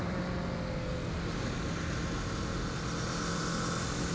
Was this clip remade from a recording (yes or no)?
no